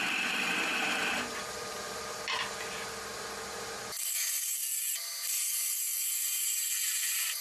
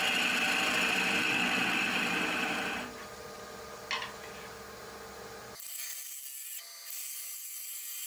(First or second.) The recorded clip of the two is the second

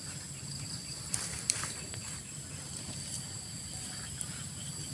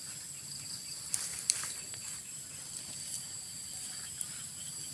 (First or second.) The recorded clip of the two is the second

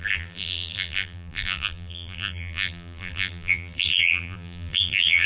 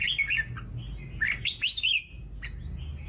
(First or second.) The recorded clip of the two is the second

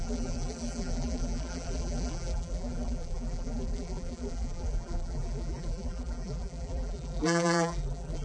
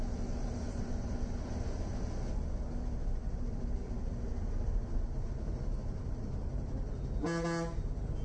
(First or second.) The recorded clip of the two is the second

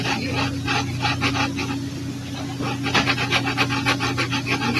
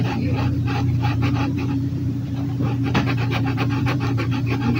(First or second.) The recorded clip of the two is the first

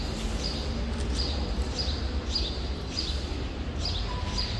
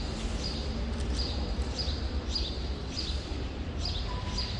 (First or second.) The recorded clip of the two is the first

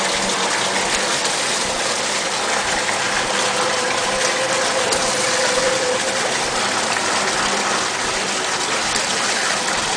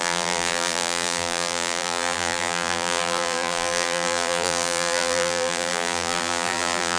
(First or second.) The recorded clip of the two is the first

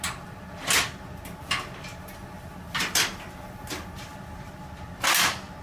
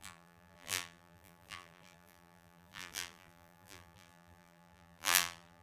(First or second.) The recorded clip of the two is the first